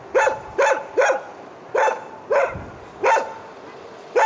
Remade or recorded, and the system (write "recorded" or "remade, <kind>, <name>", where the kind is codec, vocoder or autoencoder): recorded